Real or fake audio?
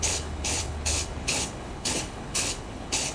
fake